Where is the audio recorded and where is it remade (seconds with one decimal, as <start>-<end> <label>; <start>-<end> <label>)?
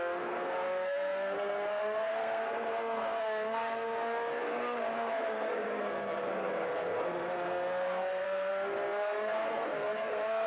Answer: 0.0-10.5 remade